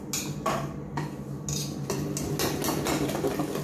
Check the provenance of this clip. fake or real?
real